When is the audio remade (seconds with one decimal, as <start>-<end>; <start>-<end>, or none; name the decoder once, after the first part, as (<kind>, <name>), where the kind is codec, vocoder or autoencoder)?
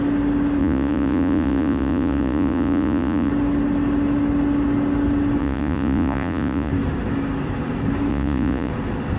0.6-3.3 (vocoder, Vocos); 5.4-6.7; 8.1-8.7